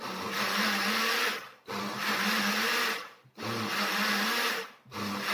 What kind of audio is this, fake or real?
real